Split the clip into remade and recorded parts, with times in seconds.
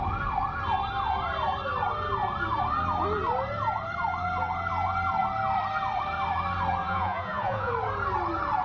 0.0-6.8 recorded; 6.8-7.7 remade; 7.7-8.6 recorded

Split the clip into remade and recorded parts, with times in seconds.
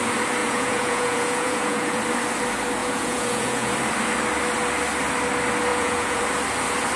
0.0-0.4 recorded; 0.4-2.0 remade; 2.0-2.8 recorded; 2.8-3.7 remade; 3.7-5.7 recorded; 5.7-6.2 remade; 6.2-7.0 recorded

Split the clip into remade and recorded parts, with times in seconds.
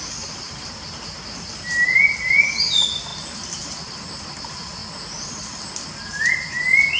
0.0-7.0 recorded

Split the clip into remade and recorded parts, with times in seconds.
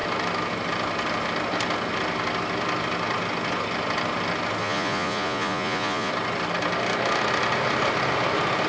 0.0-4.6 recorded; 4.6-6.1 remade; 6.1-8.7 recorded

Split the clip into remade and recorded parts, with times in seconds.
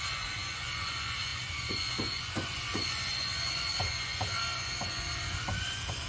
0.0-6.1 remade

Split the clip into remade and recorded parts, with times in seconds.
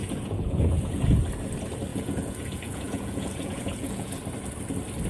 0.0-1.2 remade; 1.2-1.9 recorded; 1.9-4.2 remade; 4.2-5.1 recorded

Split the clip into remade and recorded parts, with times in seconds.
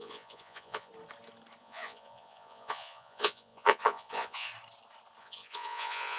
0.0-0.9 remade; 0.9-1.6 recorded; 1.6-4.5 remade; 4.5-5.2 recorded; 5.2-6.2 remade